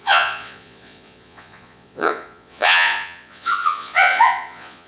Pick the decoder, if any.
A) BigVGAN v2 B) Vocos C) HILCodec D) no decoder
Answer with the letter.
B